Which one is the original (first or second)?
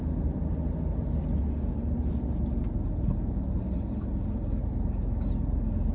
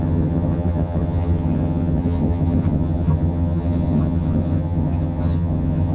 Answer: first